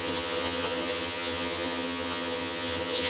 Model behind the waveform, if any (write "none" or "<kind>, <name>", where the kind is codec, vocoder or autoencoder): vocoder, HiFi-GAN